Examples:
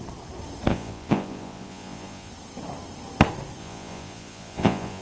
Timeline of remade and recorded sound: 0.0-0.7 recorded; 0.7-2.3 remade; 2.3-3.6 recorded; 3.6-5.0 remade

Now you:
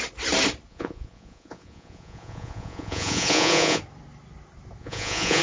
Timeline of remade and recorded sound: 0.0-0.7 recorded; 0.7-3.8 remade; 3.8-4.8 recorded; 4.8-5.4 remade

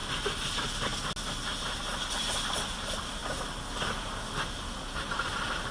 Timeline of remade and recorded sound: 0.0-0.5 recorded; 0.5-0.9 remade; 0.9-2.1 recorded; 2.1-3.2 remade; 3.2-3.9 recorded; 3.9-5.7 remade

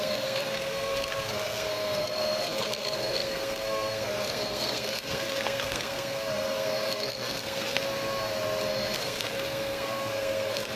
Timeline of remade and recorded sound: 0.0-7.8 remade; 7.8-8.7 recorded; 8.7-10.8 remade

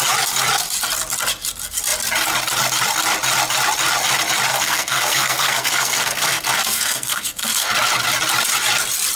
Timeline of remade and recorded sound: 0.0-4.5 recorded; 4.5-7.7 remade; 7.7-9.2 recorded